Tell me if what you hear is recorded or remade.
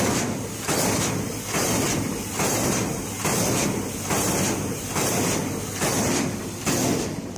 recorded